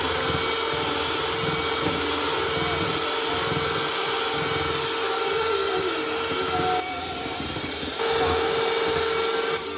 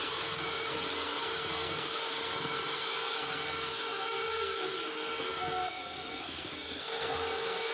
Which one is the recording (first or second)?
first